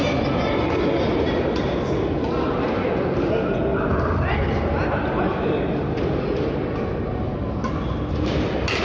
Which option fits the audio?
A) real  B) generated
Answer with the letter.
A